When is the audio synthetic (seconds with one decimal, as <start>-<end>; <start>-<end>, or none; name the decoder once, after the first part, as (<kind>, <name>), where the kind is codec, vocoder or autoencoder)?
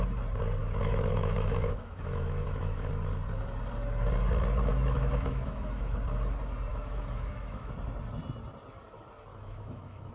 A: 0.6-2.9 (autoencoder, DAC-VAE); 4.7-6.0; 6.7-7.7; 9.3-10.1